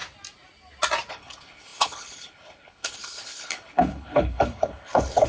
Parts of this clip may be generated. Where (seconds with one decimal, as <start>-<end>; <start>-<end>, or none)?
1.1-5.3